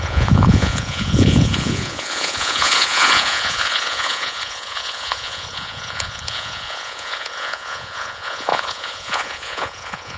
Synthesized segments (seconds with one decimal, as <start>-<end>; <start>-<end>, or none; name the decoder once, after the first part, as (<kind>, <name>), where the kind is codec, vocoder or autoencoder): 0.0-10.2 (vocoder, Vocos)